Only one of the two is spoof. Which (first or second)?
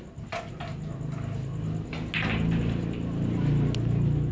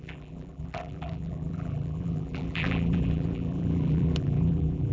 second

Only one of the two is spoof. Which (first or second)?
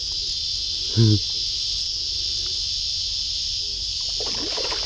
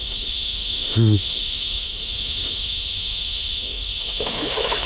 second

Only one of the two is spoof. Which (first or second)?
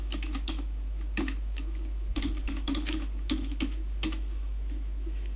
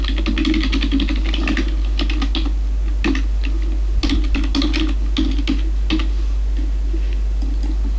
first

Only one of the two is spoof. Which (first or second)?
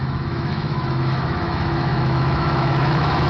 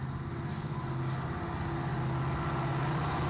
first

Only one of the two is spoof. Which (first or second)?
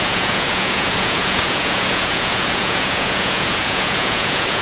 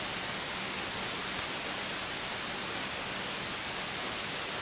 first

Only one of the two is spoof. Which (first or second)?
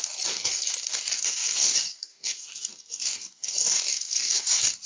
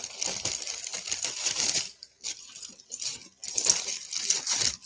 first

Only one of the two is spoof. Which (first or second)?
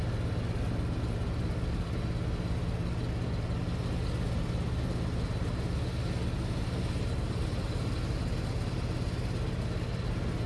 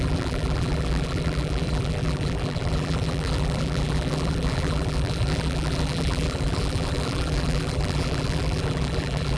second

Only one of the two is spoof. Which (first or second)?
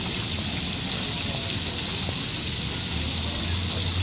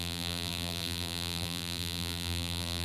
second